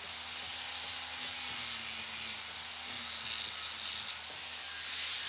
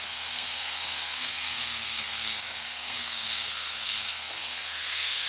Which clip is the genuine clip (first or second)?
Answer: first